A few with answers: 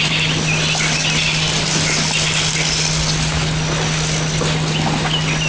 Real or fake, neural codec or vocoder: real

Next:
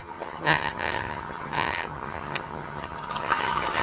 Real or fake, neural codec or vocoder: fake, vocoder, HiFi-GAN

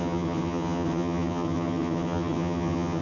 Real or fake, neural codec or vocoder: fake, vocoder, HiFi-GAN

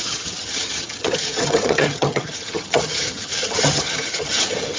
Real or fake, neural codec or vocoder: fake, vocoder, HiFi-GAN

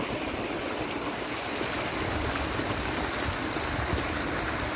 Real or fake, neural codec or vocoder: real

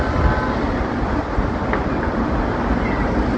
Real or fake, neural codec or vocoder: real